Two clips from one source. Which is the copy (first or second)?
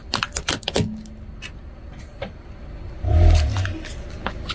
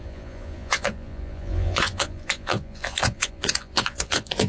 second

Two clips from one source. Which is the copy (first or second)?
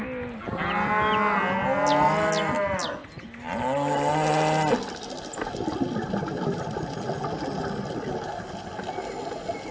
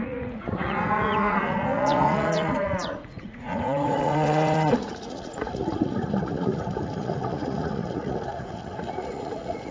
second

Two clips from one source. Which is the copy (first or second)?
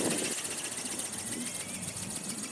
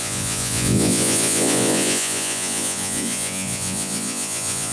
second